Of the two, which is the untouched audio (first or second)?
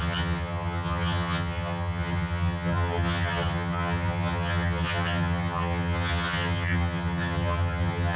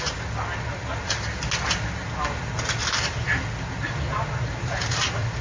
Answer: second